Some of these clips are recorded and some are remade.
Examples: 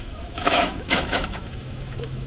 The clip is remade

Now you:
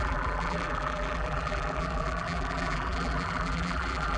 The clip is remade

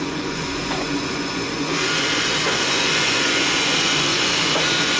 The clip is remade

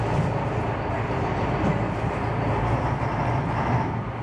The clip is recorded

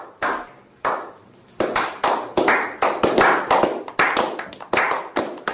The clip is recorded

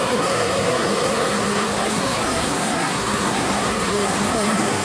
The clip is remade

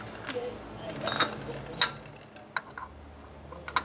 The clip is recorded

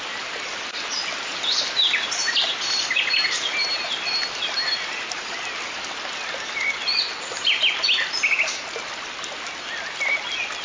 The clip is recorded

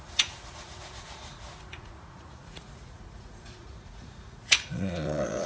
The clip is remade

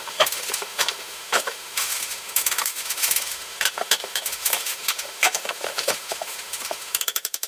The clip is remade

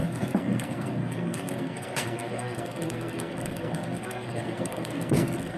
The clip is remade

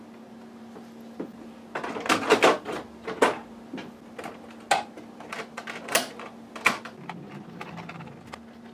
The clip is recorded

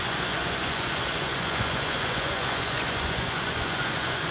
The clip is remade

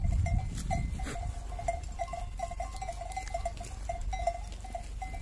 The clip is recorded